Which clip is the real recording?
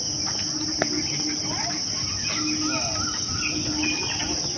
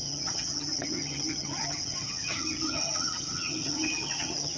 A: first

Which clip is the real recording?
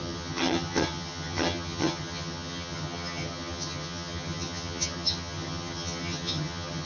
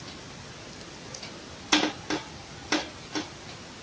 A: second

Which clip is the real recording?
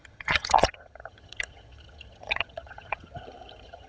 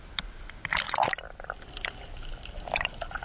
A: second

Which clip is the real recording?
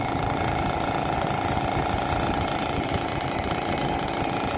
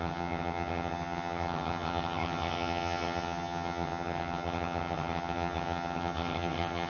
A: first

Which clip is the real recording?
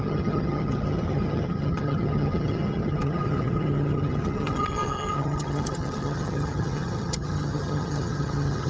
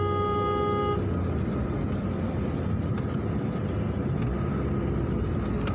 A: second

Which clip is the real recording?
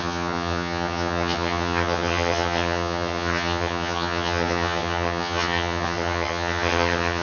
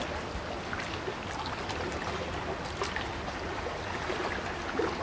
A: second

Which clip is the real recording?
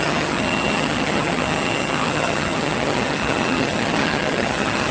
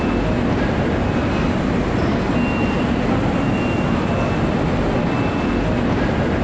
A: second